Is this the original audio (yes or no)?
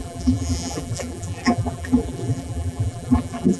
no